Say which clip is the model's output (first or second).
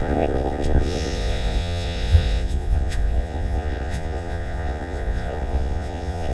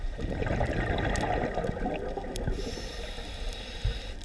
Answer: first